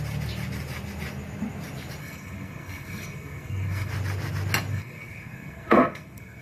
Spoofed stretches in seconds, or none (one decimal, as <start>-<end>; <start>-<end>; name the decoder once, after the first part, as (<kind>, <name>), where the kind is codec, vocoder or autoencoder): 2.0-3.9 (codec, SNAC); 4.7-6.4